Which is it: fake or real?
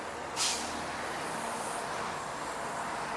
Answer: real